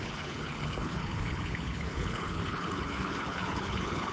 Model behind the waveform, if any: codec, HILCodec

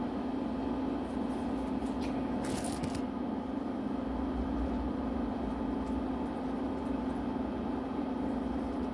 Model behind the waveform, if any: none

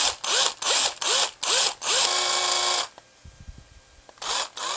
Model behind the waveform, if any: none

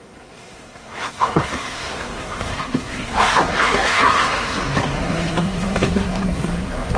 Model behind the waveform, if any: codec, SNAC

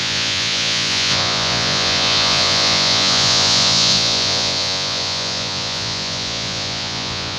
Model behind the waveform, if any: vocoder, Vocos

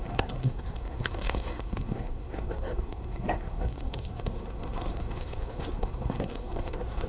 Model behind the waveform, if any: codec, SNAC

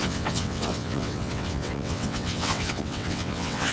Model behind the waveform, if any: vocoder, WaveNeXt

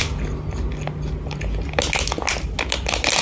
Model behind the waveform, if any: none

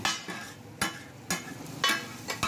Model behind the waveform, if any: none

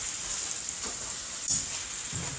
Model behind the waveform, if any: none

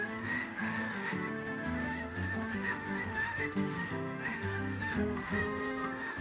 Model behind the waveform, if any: autoencoder, DAC-VAE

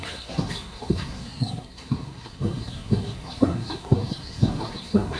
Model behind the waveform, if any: codec, SNAC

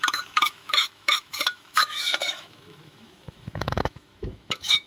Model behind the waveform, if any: autoencoder, DAC-VAE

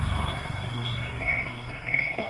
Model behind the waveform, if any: codec, SNAC